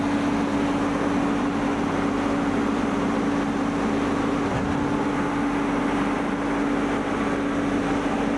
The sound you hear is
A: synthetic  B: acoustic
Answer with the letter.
B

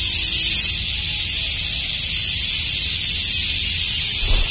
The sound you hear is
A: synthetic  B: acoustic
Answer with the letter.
B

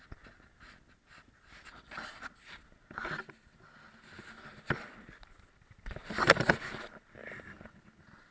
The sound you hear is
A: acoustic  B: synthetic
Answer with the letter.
A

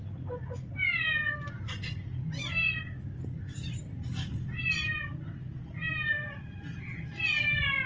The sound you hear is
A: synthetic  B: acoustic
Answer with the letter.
B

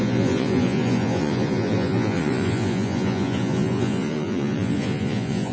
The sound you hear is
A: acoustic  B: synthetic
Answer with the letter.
B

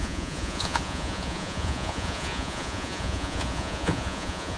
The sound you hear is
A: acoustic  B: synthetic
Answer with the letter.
B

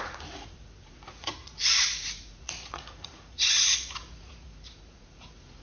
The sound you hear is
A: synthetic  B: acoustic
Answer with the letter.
A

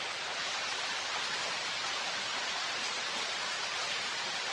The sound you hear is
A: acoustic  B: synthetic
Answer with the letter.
A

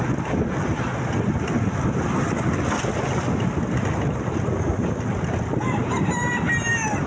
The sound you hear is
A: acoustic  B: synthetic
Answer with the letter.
A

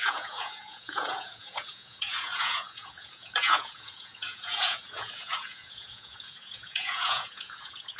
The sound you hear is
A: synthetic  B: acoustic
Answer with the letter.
A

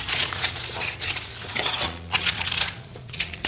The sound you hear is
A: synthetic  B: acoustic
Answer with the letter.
A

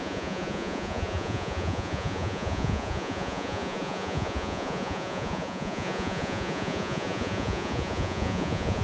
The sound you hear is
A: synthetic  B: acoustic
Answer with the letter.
A